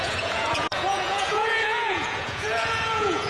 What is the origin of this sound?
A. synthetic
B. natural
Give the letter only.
A